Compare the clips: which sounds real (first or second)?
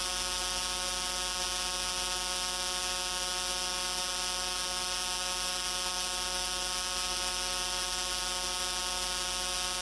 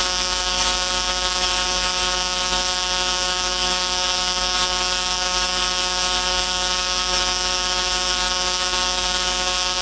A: first